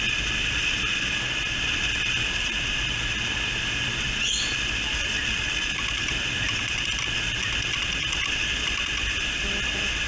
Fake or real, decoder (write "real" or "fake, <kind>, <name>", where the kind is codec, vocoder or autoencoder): real